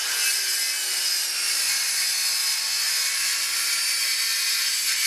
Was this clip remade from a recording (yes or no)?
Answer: no